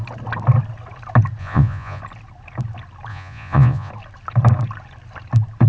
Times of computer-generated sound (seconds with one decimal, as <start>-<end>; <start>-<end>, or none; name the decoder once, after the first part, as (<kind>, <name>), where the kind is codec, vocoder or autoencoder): 1.4-2.0 (vocoder, Vocos); 3.1-3.9